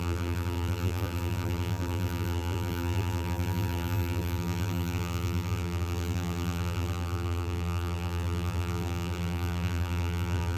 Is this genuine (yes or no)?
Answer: no